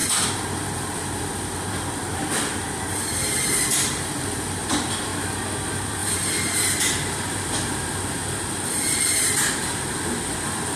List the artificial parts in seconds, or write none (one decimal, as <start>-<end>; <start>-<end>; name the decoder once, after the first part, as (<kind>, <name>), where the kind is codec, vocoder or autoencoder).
0.0-5.1 (vocoder, BigVGAN v2); 5.6-10.8